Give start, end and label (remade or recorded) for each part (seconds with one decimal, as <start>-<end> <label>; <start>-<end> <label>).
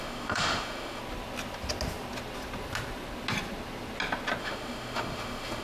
0.0-1.0 remade; 1.0-4.4 recorded; 4.4-5.6 remade